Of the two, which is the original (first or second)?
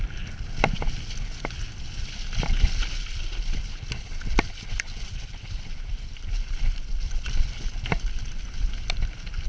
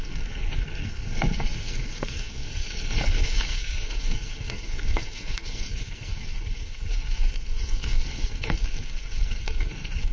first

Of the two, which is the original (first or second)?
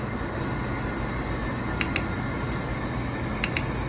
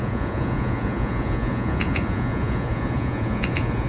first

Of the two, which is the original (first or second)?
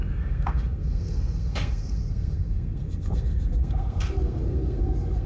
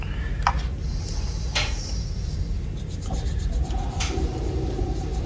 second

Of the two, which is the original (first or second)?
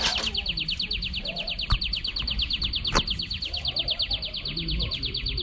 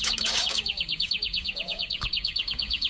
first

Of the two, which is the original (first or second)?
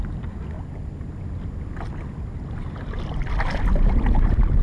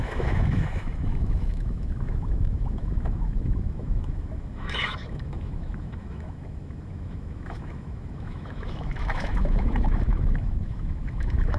first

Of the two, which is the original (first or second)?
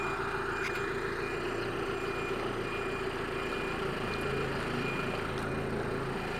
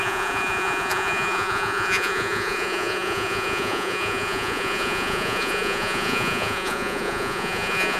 first